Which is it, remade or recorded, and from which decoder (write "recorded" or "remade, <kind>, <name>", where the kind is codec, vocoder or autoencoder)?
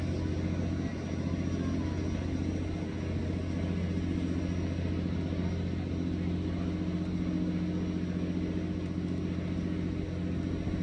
recorded